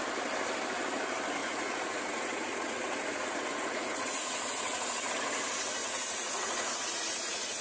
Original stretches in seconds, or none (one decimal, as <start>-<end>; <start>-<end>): 0.0-1.4; 5.1-5.8